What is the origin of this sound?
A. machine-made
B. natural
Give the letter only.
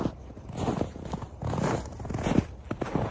B